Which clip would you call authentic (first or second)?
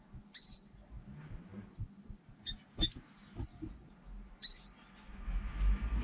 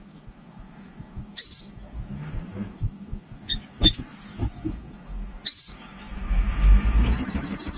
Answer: first